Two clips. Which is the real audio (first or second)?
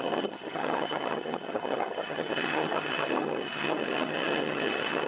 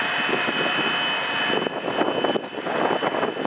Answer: second